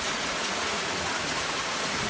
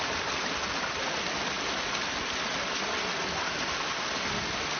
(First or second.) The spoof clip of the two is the first